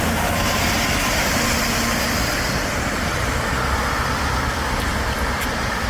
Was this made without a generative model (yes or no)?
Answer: yes